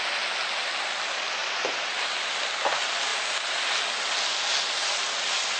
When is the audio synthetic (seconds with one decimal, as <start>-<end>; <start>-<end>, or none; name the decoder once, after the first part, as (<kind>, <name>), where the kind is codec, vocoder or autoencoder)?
none